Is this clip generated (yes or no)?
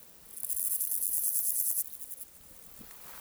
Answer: no